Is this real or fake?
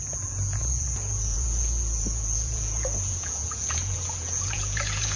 fake